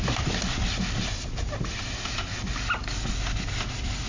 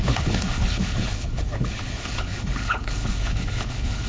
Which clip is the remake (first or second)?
second